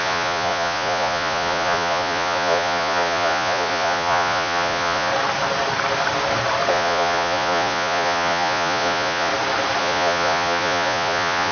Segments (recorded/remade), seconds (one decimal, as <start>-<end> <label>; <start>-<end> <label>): 0.0-5.1 remade; 5.1-6.7 recorded; 6.7-9.3 remade; 9.3-9.8 recorded; 9.8-11.5 remade